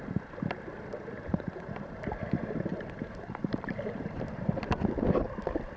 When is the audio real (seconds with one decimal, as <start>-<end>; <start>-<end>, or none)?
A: 0.0-2.7; 4.4-5.8